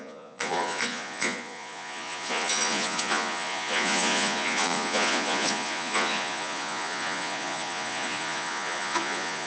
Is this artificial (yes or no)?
yes